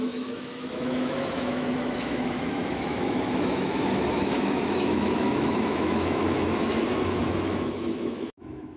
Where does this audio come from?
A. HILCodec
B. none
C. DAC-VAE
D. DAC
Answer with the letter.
C